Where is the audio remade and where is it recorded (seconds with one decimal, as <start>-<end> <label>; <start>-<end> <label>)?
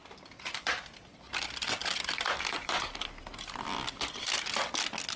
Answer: 0.0-1.3 remade; 1.3-1.8 recorded; 1.8-3.2 remade; 3.2-5.2 recorded